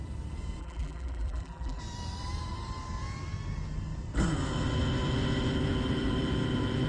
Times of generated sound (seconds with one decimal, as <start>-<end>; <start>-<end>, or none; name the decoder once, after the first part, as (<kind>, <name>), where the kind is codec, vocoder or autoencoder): 0.6-1.8 (vocoder, BigVGAN v2)